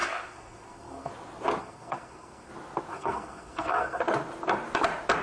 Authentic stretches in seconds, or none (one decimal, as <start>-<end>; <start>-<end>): 1.1-1.6; 2.5-2.9; 4.0-5.2